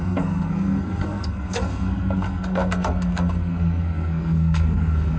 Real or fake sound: fake